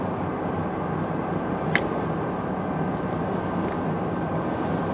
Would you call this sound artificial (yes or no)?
no